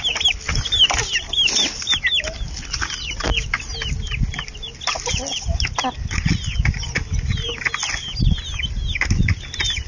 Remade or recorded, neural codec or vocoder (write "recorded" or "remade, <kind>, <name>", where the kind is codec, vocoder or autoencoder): recorded